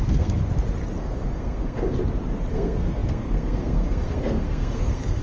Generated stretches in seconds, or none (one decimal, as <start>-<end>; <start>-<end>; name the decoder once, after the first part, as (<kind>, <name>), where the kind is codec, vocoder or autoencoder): 0.0-0.4 (codec, SNAC); 1.0-1.9; 2.5-5.2